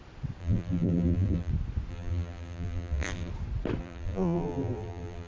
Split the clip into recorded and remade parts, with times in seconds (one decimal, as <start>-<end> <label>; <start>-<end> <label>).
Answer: 0.0-0.4 recorded; 0.4-1.5 remade; 1.5-1.9 recorded; 1.9-3.3 remade; 3.3-3.8 recorded; 3.8-5.3 remade